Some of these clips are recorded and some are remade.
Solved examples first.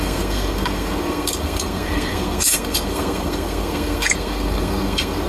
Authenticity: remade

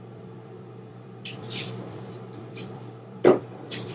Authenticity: remade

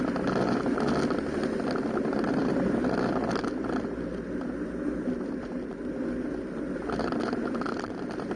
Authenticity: recorded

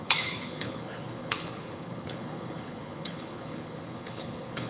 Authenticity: remade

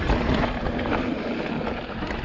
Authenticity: recorded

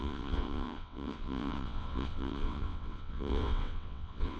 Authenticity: remade